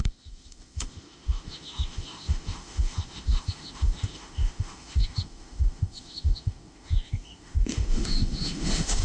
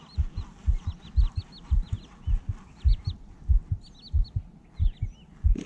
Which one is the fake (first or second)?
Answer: first